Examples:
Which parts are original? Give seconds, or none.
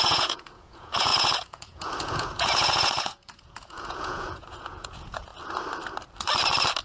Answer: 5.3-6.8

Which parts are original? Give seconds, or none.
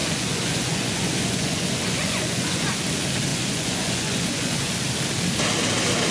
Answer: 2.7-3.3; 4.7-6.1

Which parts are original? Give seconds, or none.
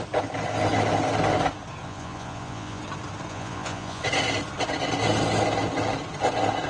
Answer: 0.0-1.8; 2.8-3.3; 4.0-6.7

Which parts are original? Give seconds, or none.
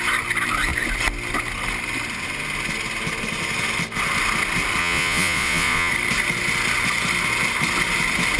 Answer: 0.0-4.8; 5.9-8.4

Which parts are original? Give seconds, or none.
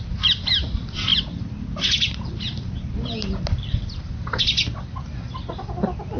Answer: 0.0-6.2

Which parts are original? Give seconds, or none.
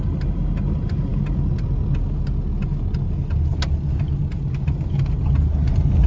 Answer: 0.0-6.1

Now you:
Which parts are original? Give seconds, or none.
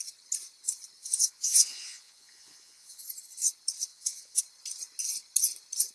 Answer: 0.0-1.0; 3.1-3.9; 4.4-5.9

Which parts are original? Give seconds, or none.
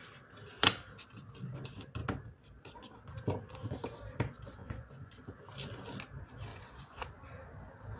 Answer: 0.0-4.6; 5.1-6.5; 7.0-8.0